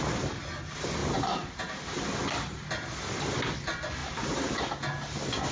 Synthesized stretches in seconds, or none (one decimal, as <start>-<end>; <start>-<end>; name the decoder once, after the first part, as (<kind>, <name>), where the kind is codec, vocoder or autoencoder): 1.0-1.7 (vocoder, BigVGAN v2); 4.0-4.6